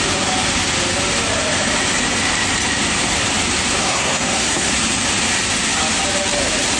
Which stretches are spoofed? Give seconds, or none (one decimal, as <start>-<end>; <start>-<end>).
3.8-4.7

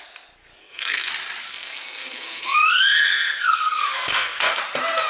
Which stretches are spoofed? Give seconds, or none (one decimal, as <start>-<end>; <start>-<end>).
0.6-1.1; 1.5-4.6

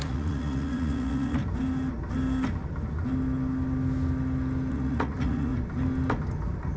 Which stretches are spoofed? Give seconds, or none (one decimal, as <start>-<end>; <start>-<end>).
0.0-1.4; 4.7-5.5

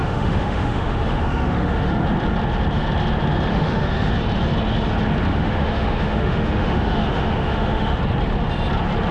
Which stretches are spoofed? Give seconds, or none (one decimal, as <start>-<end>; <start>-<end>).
0.0-1.9; 3.5-4.1; 5.3-8.0